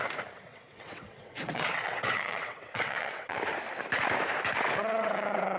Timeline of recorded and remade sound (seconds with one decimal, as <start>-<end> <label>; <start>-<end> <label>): 0.0-0.5 recorded; 0.5-3.4 remade; 3.4-4.8 recorded; 4.8-5.6 remade